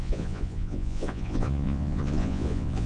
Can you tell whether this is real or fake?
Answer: fake